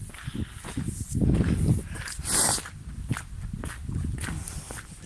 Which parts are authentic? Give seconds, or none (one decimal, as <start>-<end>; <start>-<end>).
0.0-5.1